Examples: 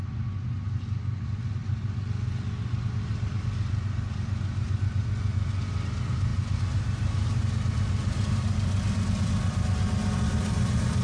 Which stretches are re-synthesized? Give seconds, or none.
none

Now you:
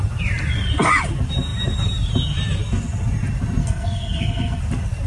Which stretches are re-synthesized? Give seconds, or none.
3.6-4.6

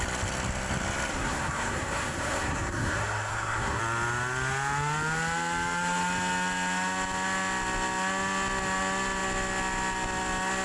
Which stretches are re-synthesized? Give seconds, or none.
1.1-3.8

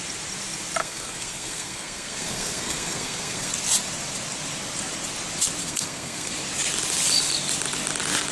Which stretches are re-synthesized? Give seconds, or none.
0.8-3.5; 5.6-6.3

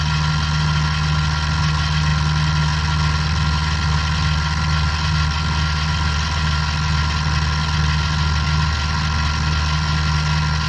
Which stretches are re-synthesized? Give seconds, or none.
none

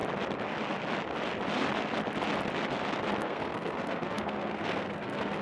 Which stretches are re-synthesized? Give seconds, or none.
3.2-5.4

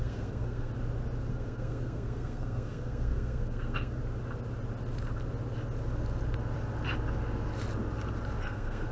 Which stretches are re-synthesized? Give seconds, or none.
0.0-0.7; 1.3-4.0; 8.4-8.9